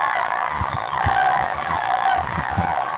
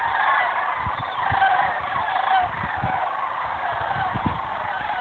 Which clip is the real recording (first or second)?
second